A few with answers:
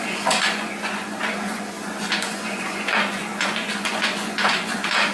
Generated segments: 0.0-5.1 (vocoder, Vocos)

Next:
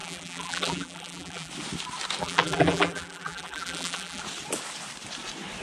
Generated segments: 0.0-1.5 (vocoder, BigVGAN v2); 2.2-4.2